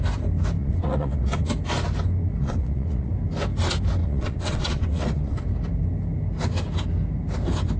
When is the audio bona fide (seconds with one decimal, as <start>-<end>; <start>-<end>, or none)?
0.0-0.6; 1.5-2.4; 3.1-4.0; 5.4-7.8